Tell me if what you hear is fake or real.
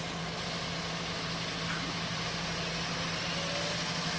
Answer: real